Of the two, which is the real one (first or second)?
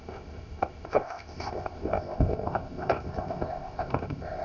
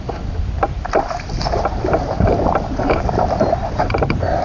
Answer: second